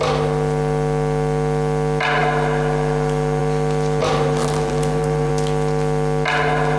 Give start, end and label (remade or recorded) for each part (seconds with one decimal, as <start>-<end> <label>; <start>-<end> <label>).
0.0-4.0 recorded; 4.0-5.3 remade; 5.3-6.8 recorded